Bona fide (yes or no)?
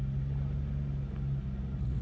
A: yes